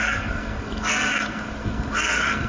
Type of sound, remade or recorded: remade